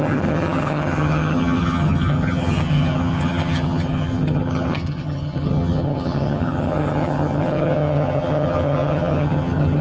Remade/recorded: remade